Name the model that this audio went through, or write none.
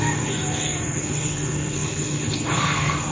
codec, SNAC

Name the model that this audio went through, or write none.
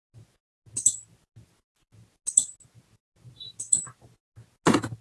none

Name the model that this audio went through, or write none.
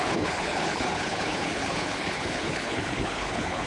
codec, HILCodec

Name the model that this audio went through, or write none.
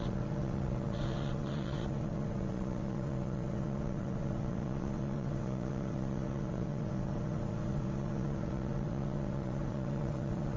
vocoder, WaveNeXt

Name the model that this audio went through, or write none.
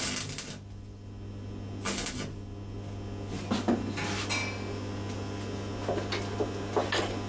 none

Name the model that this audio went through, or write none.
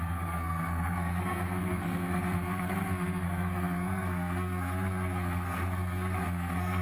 codec, SNAC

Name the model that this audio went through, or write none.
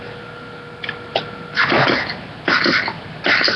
none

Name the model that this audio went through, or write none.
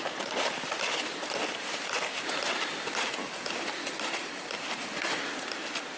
none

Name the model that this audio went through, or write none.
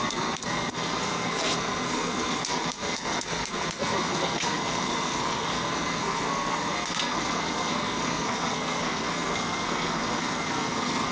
codec, SNAC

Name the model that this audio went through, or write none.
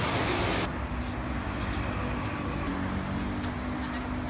none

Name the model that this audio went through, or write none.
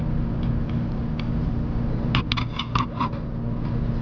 none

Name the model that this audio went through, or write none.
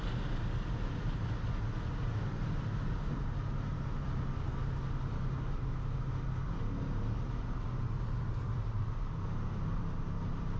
none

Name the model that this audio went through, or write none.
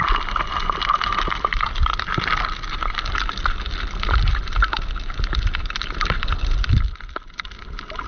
none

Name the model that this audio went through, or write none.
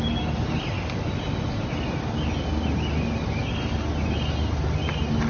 none